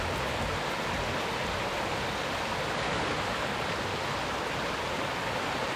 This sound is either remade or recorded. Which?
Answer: recorded